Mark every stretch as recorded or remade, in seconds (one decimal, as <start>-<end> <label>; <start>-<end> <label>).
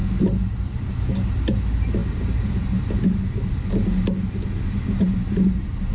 0.0-5.9 recorded